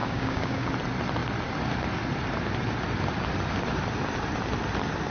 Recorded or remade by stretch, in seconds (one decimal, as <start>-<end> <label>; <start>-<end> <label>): 0.0-0.7 remade; 0.7-5.1 recorded